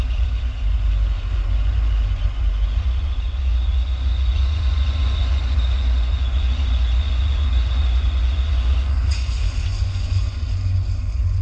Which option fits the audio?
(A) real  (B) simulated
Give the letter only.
B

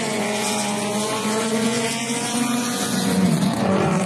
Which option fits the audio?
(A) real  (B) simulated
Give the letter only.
B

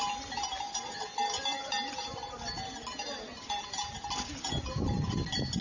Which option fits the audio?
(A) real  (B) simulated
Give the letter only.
A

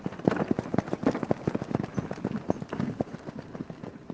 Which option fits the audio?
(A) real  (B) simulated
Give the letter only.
A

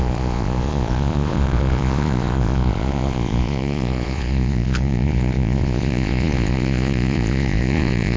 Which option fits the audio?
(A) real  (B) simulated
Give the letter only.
B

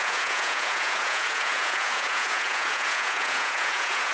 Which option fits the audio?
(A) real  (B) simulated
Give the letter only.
B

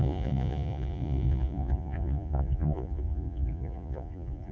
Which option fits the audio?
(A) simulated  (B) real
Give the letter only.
A